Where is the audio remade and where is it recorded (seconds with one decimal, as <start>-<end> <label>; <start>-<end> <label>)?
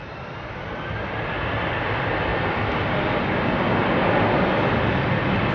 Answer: 0.0-5.5 recorded